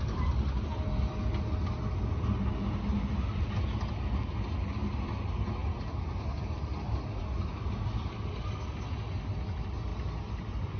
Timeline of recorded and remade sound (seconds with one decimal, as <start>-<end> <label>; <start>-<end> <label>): 0.0-10.8 recorded